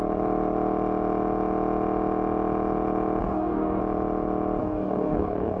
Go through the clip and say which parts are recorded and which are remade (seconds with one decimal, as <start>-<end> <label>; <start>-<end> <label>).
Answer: 0.0-3.2 recorded; 3.2-3.8 remade; 3.8-4.6 recorded; 4.6-5.6 remade